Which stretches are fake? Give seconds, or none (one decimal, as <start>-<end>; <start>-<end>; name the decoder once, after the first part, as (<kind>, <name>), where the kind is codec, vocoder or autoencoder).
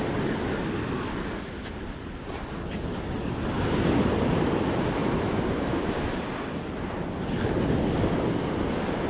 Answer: 5.0-6.3 (vocoder, BigVGAN v2)